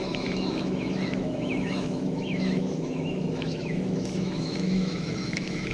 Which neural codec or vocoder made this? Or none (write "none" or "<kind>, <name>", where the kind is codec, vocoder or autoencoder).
autoencoder, DAC-VAE